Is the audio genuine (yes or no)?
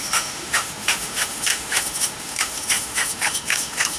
no